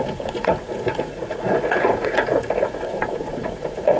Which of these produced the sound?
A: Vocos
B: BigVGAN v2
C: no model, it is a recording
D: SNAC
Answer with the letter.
A